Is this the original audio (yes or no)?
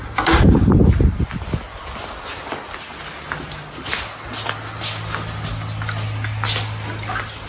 yes